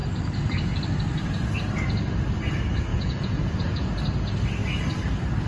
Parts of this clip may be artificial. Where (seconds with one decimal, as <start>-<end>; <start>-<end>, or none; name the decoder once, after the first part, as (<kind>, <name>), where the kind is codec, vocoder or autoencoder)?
2.9-3.9 (vocoder, Vocos)